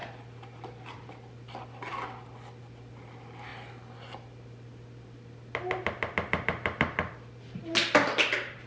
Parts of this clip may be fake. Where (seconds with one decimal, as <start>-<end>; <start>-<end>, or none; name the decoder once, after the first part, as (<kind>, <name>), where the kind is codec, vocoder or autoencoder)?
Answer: none